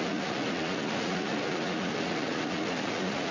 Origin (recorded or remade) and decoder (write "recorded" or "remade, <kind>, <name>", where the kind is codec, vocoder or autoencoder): remade, vocoder, Vocos